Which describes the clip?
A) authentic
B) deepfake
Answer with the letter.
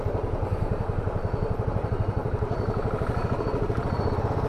B